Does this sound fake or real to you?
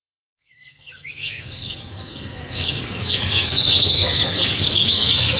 fake